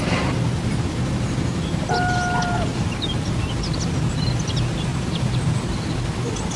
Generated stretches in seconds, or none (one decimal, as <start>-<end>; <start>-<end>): 2.7-3.6; 4.9-5.6